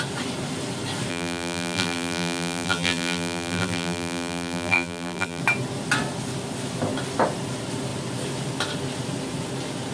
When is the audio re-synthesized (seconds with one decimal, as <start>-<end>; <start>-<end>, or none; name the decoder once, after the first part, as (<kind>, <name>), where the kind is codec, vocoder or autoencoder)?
1.1-5.4 (vocoder, BigVGAN v2)